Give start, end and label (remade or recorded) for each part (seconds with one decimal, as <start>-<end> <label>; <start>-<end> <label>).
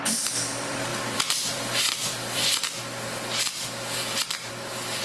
0.0-2.4 remade; 2.4-4.5 recorded; 4.5-5.0 remade